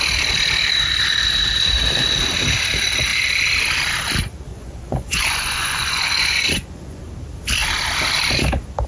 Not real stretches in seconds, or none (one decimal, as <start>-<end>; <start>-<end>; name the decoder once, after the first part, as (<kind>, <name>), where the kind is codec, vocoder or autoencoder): 4.5-7.0 (vocoder, Vocos)